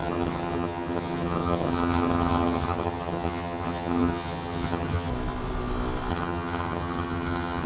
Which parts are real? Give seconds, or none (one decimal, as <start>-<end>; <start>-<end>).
5.1-6.1